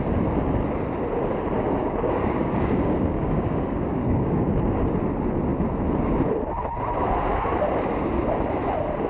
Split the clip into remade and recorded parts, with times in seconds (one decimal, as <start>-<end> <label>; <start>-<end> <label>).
0.0-1.8 recorded; 1.8-4.5 remade; 4.5-9.1 recorded